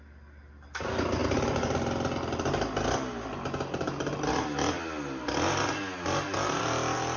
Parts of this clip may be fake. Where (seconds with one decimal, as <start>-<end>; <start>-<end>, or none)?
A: none